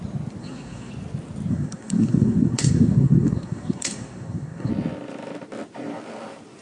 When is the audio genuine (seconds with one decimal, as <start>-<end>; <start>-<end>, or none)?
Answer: 0.0-0.4; 0.9-1.5; 4.7-6.6